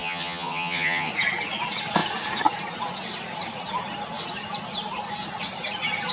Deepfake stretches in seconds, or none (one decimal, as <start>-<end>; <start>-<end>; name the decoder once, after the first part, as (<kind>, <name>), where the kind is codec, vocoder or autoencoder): 0.0-1.1 (vocoder, HiFi-GAN)